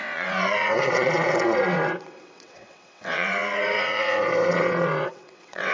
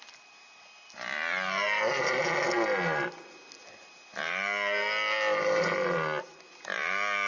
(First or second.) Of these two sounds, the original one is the second